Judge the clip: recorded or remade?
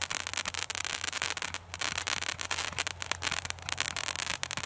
recorded